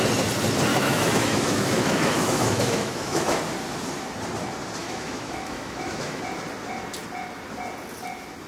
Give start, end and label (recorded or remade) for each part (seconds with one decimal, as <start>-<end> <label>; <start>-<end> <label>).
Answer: 0.0-0.7 recorded; 0.7-3.4 remade; 3.4-4.8 recorded; 4.8-6.2 remade; 6.2-8.5 recorded